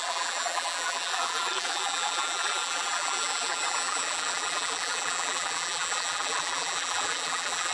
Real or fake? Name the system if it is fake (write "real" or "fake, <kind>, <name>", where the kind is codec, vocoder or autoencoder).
fake, vocoder, BigVGAN v2